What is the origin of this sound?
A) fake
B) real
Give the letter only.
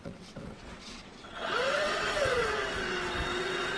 A